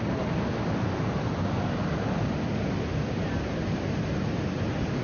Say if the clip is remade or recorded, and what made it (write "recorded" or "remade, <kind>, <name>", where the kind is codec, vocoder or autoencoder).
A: recorded